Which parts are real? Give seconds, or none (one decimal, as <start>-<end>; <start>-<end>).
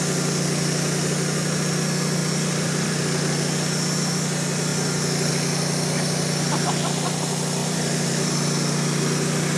0.0-2.2; 3.0-7.6; 8.3-9.6